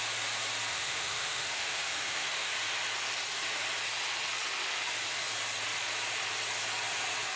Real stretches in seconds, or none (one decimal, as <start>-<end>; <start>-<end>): 0.0-0.7; 2.5-7.4